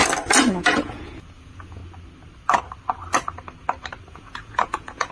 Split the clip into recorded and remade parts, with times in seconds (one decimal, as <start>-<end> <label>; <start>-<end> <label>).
0.0-0.5 recorded; 0.5-1.8 remade; 1.8-4.1 recorded; 4.1-5.1 remade